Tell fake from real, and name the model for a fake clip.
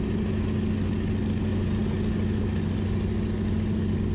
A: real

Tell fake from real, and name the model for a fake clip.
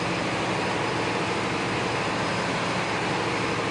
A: real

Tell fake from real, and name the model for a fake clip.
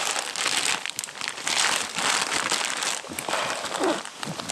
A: real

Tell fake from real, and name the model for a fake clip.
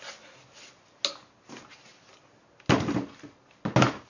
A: real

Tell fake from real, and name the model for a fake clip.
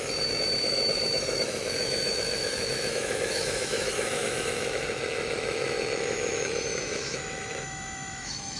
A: fake, autoencoder, DAC-VAE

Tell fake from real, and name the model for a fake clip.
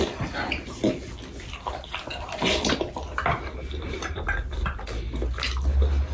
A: real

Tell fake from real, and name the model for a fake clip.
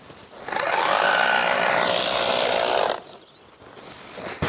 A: real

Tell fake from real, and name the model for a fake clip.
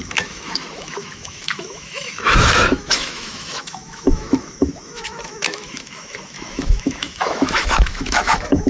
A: fake, autoencoder, DAC-VAE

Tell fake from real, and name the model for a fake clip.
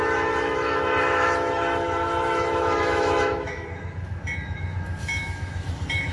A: fake, autoencoder, DAC-VAE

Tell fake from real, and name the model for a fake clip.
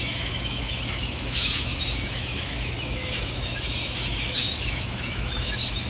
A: fake, autoencoder, DAC-VAE